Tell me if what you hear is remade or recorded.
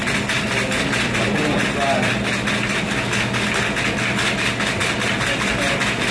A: recorded